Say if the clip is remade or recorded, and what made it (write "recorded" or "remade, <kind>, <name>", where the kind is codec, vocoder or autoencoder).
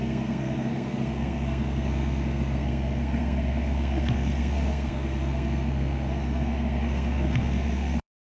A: remade, codec, SNAC